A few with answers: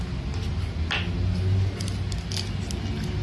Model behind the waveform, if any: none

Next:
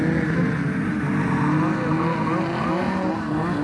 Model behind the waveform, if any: none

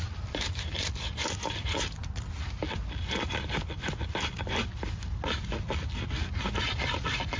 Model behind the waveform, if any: none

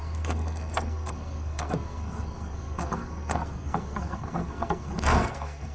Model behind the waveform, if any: codec, SNAC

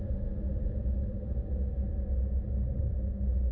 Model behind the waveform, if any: none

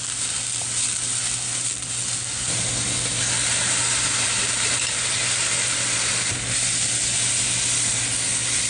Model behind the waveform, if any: none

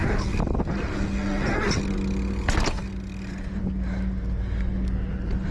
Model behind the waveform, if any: none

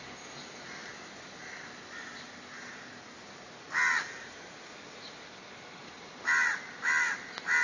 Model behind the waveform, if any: none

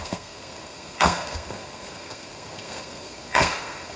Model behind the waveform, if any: codec, SNAC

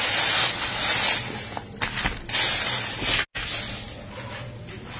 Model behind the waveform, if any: none